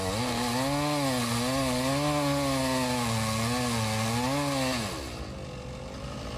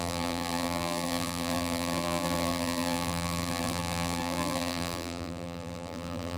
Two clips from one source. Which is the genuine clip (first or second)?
first